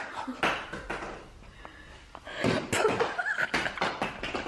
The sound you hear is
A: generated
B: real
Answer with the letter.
B